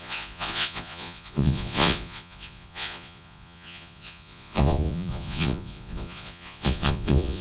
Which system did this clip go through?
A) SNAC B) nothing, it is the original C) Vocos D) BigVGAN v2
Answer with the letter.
C